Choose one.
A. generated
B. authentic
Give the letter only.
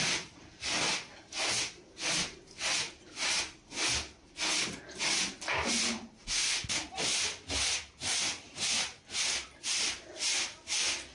B